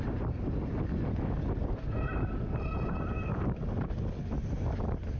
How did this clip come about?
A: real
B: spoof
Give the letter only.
A